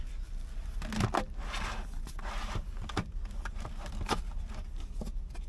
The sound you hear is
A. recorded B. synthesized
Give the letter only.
A